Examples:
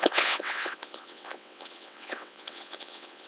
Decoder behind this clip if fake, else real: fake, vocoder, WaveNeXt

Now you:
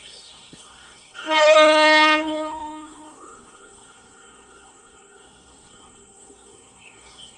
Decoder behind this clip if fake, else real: fake, codec, SNAC